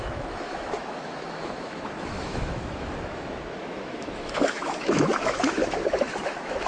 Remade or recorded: remade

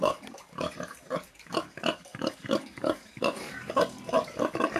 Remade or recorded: remade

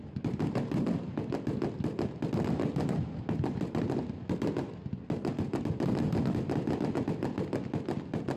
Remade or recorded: recorded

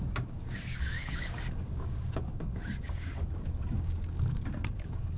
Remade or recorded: remade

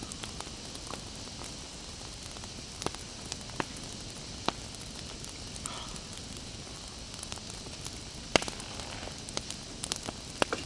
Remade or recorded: recorded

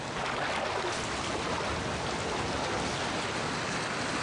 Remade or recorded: recorded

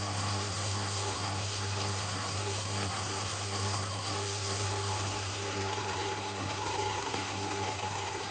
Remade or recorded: remade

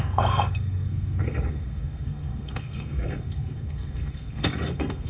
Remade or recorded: remade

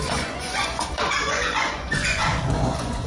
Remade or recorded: remade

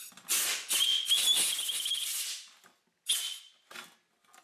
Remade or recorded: recorded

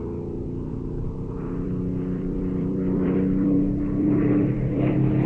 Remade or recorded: remade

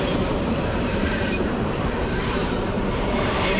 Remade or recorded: remade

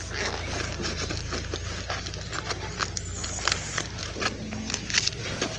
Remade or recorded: recorded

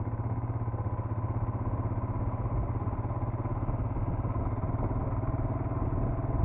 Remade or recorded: recorded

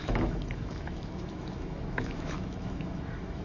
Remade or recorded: remade